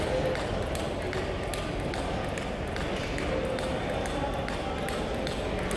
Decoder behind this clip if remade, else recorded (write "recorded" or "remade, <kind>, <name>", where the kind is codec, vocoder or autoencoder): recorded